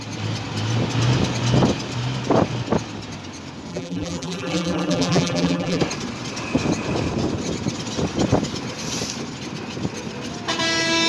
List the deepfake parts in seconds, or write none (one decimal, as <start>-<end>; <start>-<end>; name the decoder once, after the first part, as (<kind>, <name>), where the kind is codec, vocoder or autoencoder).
3.7-5.8 (vocoder, BigVGAN v2)